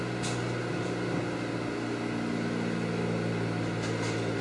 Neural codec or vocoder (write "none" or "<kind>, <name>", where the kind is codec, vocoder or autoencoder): none